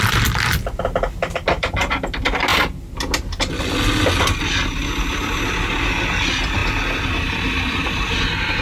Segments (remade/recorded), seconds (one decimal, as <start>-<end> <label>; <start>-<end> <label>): 0.0-8.6 recorded